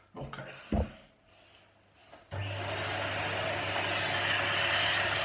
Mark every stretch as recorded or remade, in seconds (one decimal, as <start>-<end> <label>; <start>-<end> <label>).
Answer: 0.0-5.2 recorded